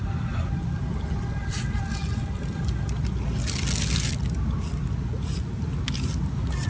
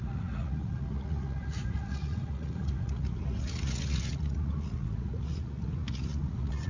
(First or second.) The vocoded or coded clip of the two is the second